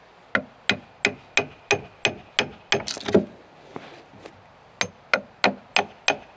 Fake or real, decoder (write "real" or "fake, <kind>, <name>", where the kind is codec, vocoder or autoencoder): real